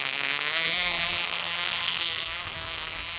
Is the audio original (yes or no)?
no